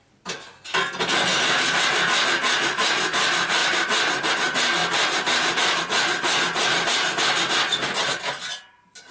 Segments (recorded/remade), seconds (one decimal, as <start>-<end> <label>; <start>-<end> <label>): 0.0-9.1 recorded